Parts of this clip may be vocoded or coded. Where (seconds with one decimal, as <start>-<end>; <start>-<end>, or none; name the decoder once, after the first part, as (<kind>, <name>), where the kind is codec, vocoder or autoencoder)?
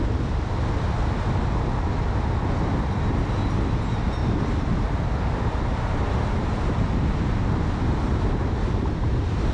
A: 4.2-9.5 (vocoder, BigVGAN v2)